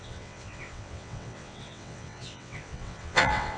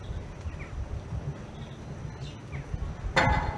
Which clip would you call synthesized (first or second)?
first